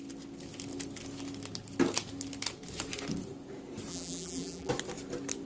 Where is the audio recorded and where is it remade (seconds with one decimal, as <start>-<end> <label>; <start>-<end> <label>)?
0.0-3.9 recorded; 3.9-4.7 remade; 4.7-5.5 recorded

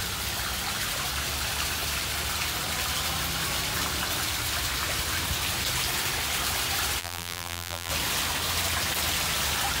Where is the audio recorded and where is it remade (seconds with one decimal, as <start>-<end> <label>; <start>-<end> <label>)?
0.0-7.0 recorded; 7.0-7.9 remade; 7.9-9.8 recorded

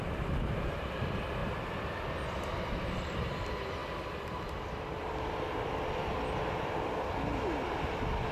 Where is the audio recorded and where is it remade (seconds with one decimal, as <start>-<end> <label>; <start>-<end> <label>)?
0.0-1.4 remade; 1.4-2.2 recorded; 2.2-8.3 remade

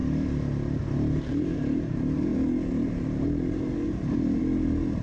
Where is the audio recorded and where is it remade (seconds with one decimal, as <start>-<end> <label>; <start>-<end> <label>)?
0.0-1.2 recorded; 1.2-5.0 remade

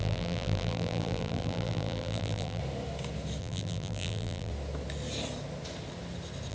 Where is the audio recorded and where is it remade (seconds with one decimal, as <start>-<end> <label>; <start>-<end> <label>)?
0.0-2.6 remade; 2.6-3.4 recorded; 3.4-4.5 remade; 4.5-6.5 recorded

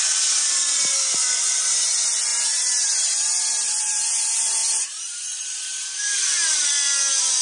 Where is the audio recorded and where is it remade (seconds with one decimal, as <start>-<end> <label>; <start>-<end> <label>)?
0.0-1.2 recorded; 1.2-1.9 remade; 1.9-2.3 recorded; 2.3-6.7 remade; 6.7-7.4 recorded